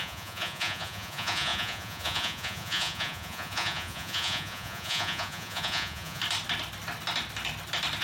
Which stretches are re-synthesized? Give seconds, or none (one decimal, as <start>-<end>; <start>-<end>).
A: 0.0-6.2